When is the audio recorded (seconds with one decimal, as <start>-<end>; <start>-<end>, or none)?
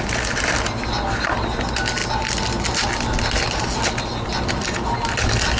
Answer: 0.0-5.6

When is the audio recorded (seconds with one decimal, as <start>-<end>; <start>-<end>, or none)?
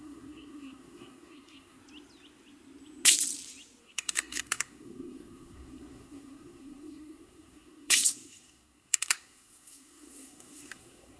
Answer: 1.8-3.8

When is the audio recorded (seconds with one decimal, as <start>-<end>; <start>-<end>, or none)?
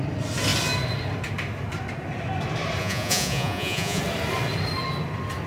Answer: 0.0-2.8; 4.0-5.5